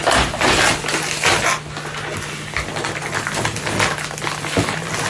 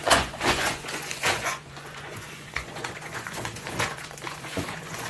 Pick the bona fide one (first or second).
first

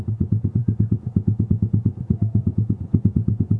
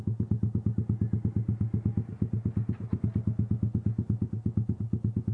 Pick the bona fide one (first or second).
second